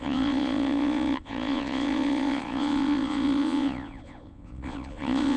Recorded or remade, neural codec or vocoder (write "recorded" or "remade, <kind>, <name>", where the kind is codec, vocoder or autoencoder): remade, vocoder, Vocos